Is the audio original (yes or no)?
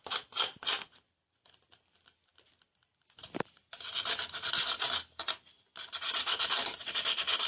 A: yes